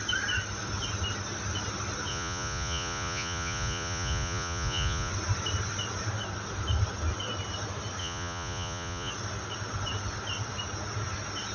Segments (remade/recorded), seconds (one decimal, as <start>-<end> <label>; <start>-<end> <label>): 0.0-2.1 recorded; 2.1-5.1 remade; 5.1-8.0 recorded; 8.0-9.1 remade; 9.1-11.5 recorded